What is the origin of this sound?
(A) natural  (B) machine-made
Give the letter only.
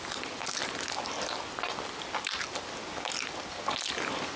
A